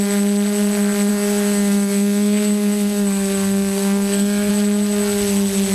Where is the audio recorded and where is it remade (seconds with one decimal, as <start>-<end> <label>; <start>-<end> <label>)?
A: 0.0-1.1 recorded; 1.1-4.5 remade; 4.5-5.7 recorded